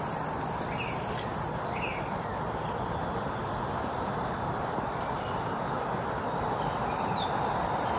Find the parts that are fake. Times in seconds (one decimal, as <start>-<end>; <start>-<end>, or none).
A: none